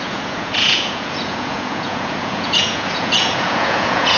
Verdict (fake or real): fake